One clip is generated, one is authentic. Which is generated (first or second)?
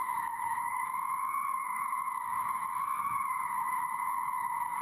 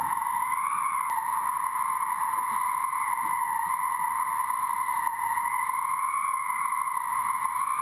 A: first